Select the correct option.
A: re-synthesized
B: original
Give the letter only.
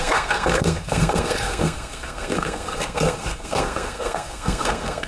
A